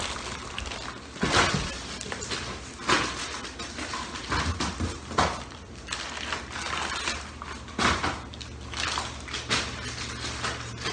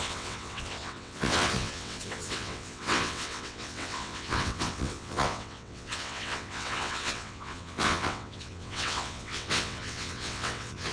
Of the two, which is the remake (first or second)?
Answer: second